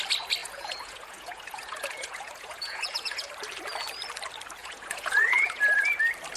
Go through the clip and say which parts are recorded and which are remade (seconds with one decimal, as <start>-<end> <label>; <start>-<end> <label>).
0.0-0.4 recorded; 0.4-3.3 remade; 3.3-4.6 recorded; 4.6-6.0 remade; 6.0-6.4 recorded